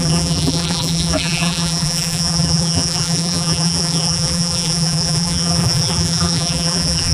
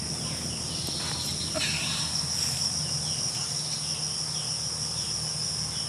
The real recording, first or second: second